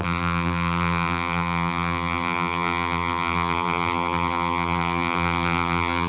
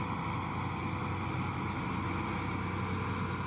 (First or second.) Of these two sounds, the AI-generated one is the first